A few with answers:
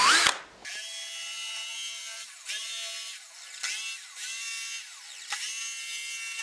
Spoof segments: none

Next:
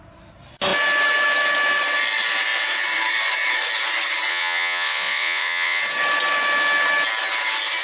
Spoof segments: 4.3-5.8

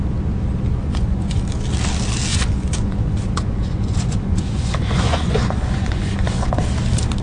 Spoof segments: 0.8-1.4; 2.3-6.6

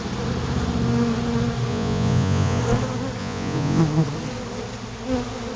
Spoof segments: 1.7-2.6; 3.2-3.8

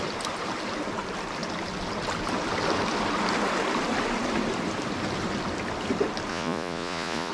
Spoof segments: 6.3-7.3